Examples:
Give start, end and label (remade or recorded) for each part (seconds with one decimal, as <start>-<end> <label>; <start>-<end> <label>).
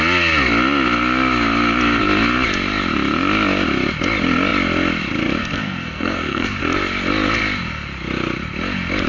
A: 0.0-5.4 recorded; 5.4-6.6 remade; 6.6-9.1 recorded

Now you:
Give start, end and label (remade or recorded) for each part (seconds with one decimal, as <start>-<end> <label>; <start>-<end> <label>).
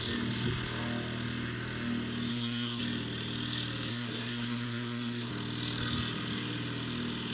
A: 0.0-2.3 recorded; 2.3-2.8 remade; 2.8-3.9 recorded; 3.9-5.3 remade; 5.3-7.3 recorded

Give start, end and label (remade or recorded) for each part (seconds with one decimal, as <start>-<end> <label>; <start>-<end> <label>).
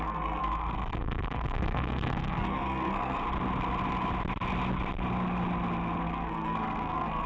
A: 0.0-3.2 remade; 3.2-6.0 recorded; 6.0-7.3 remade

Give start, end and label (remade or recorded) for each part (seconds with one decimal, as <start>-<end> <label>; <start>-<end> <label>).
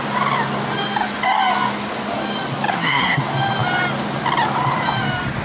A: 0.0-2.7 recorded; 2.7-3.2 remade; 3.2-5.4 recorded